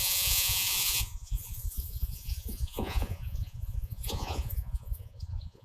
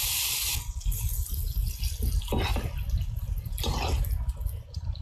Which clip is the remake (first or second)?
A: first